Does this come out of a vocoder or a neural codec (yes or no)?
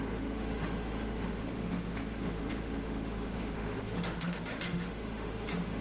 yes